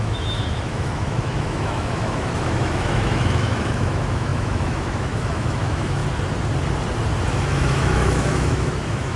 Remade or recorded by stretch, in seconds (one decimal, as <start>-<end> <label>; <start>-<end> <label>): 0.0-6.0 remade; 6.0-7.3 recorded; 7.3-9.2 remade